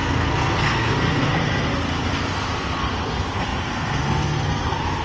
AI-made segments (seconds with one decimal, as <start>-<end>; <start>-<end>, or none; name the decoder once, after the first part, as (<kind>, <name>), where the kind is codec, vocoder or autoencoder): 0.0-1.7 (codec, SNAC); 2.8-5.0

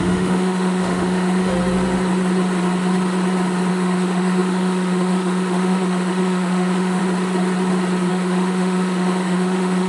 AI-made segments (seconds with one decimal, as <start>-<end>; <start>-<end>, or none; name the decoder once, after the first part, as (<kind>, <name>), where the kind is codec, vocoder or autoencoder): 0.0-1.5 (autoencoder, DAC-VAE); 3.7-7.0; 8.1-9.9

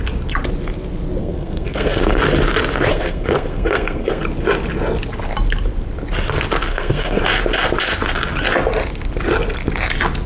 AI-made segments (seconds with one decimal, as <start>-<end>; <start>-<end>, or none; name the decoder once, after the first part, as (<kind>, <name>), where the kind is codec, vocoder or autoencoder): 1.2-2.2 (codec, SNAC); 2.9-4.2; 6.7-7.2

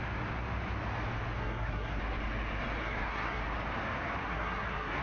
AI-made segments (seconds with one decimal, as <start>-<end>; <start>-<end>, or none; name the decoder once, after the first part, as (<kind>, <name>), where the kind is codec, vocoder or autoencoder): 1.4-2.0 (codec, SNAC); 2.8-3.4; 4.2-5.0

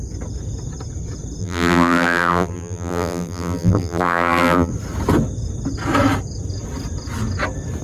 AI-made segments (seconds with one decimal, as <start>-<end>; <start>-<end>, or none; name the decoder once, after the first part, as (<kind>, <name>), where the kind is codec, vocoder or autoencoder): 1.4-4.7 (vocoder, BigVGAN v2)

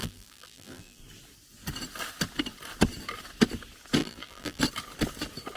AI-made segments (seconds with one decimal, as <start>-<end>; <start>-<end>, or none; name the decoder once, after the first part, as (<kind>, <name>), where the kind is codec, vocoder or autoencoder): 0.0-1.0 (vocoder, BigVGAN v2); 4.0-4.6

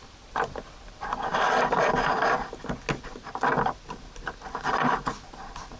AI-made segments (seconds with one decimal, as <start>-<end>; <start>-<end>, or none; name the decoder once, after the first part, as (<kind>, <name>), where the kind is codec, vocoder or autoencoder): none

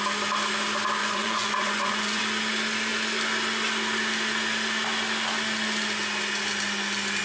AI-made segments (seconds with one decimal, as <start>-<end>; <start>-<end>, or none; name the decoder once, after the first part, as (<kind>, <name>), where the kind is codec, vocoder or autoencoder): 1.0-2.2 (vocoder, Vocos)